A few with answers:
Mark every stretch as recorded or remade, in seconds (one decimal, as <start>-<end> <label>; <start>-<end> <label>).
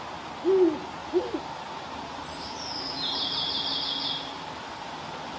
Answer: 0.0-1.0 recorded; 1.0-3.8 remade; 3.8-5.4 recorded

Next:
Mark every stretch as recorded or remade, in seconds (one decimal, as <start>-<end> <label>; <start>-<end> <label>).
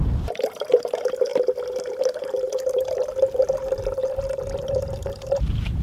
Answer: 0.0-1.3 remade; 1.3-1.9 recorded; 1.9-4.0 remade; 4.0-4.8 recorded; 4.8-5.8 remade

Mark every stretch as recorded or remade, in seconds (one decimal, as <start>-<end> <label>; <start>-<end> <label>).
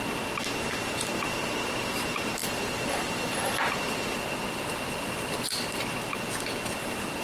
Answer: 0.0-2.4 recorded; 2.4-5.8 remade; 5.8-7.2 recorded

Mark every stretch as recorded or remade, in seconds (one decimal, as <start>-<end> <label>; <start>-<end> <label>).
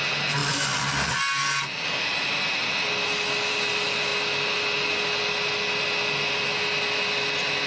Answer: 0.0-7.7 recorded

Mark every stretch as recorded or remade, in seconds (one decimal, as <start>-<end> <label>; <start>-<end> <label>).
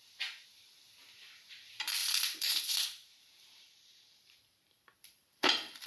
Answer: 0.0-2.0 recorded; 2.0-5.5 remade; 5.5-5.9 recorded